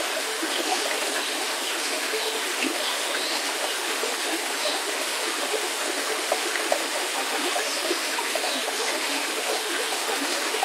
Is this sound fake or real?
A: fake